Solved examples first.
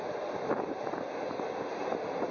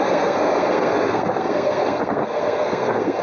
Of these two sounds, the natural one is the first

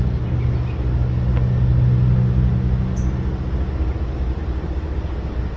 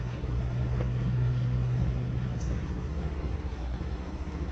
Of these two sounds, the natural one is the first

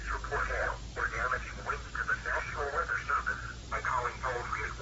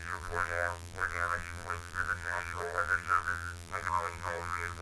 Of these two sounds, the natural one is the first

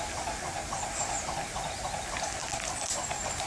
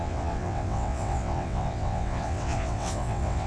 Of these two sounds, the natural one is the first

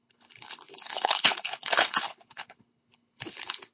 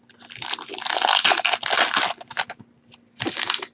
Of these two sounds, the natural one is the second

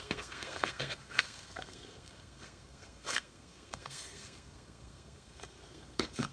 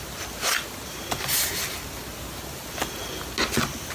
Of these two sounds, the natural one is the second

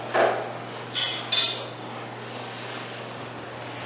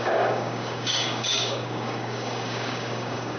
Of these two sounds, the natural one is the first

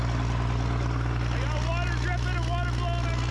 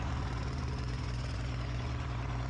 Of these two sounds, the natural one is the first